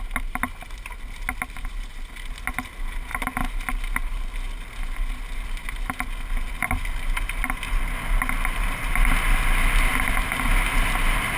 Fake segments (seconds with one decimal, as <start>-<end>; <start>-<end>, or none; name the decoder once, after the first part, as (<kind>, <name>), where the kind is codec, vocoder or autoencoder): none